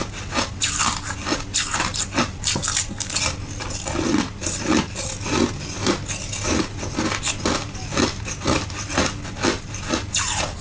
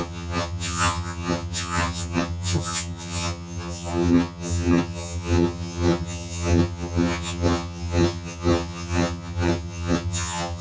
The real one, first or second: first